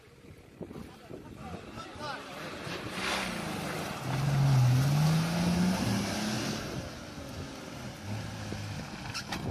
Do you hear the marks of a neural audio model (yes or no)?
no